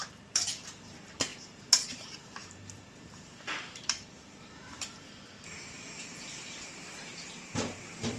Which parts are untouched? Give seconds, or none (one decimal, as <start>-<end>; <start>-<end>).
none

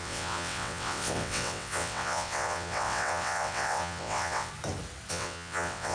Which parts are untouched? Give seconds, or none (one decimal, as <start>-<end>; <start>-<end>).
4.5-5.1

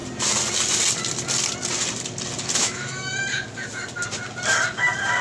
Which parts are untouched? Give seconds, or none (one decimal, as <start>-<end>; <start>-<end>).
0.0-2.6; 3.1-5.2